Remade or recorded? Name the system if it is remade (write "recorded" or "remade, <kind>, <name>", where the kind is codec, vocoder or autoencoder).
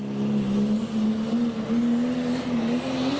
recorded